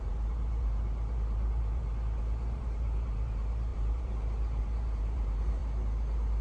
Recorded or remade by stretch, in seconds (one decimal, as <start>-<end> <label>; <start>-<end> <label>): 0.0-5.6 remade; 5.6-6.4 recorded